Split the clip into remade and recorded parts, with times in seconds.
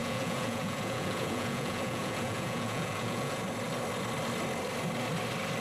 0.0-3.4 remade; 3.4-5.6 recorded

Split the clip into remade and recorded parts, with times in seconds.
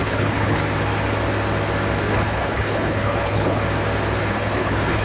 0.0-0.6 remade; 0.6-2.1 recorded; 2.1-3.6 remade; 3.6-4.3 recorded; 4.3-5.0 remade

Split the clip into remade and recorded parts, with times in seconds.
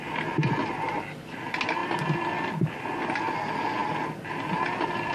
0.0-5.1 recorded